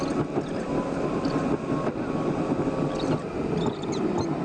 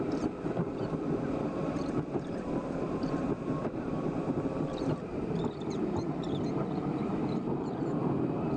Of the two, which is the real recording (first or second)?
first